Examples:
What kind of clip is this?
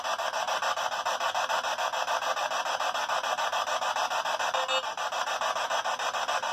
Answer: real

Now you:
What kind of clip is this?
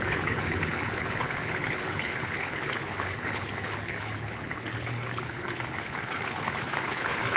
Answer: fake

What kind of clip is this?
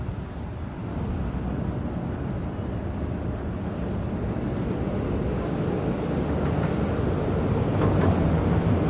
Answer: real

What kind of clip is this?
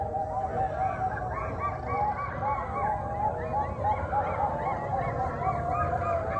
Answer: real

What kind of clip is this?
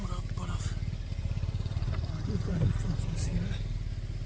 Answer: real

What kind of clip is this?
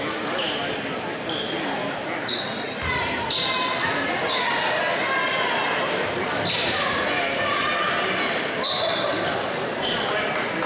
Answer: real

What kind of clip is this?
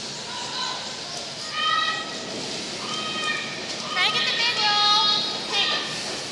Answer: real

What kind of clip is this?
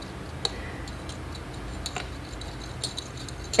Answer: real